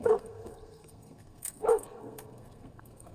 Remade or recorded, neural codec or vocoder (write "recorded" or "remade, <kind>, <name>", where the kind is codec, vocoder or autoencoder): remade, codec, SNAC